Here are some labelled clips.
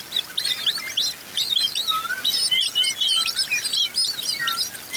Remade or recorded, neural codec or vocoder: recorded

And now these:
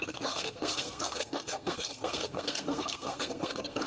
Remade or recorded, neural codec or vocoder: remade, codec, SNAC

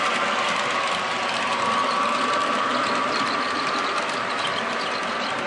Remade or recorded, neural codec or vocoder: recorded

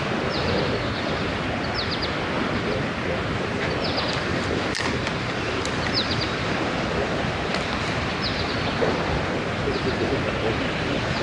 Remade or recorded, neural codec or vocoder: recorded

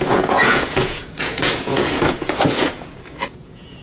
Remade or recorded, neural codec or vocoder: remade, vocoder, Vocos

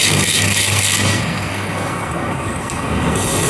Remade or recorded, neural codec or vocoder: remade, codec, SNAC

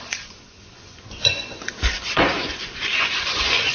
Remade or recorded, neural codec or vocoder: remade, vocoder, Vocos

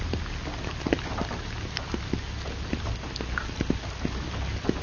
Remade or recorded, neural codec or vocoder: recorded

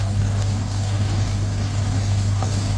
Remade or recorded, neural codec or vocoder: remade, codec, DAC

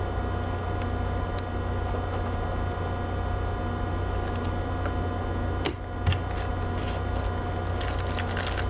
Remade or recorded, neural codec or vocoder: recorded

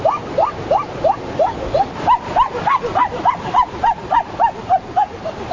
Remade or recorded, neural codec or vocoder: recorded